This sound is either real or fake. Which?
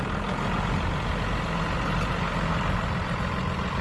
real